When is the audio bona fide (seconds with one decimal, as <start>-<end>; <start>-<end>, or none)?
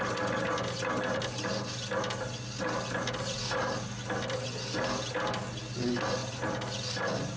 0.0-6.2; 6.7-7.4